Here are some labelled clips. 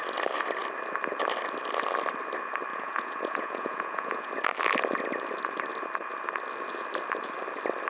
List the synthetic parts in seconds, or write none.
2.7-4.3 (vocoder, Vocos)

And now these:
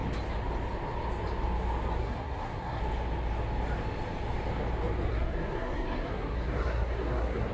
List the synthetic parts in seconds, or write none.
2.0-2.8 (codec, SNAC); 5.1-7.5